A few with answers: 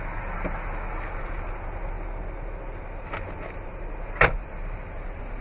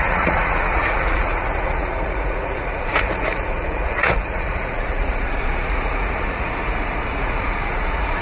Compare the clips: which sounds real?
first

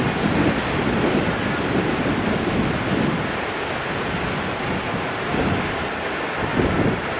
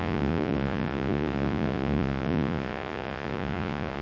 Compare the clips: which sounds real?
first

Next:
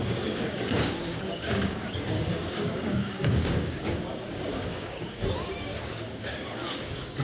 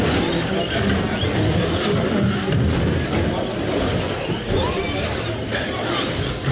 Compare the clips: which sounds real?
second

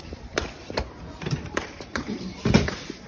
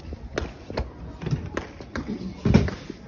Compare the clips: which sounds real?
second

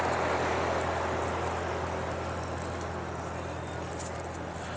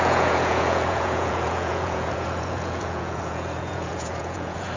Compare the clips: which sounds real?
first